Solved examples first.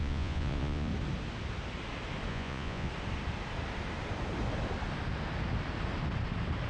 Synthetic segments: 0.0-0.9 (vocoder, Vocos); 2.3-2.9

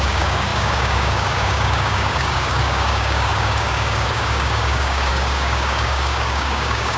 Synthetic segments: 0.0-7.0 (codec, DAC)